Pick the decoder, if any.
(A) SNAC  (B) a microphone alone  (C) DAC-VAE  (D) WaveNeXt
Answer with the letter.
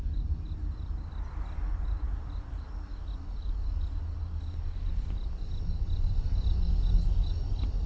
B